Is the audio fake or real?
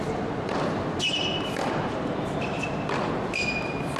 real